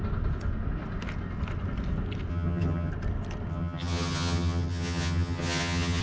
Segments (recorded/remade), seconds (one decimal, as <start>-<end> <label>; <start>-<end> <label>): 0.0-2.3 recorded; 2.3-2.9 remade; 2.9-3.5 recorded; 3.5-6.0 remade